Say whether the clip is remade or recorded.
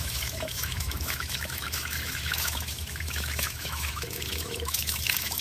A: remade